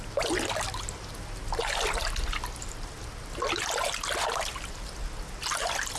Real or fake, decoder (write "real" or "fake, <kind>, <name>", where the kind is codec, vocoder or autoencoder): real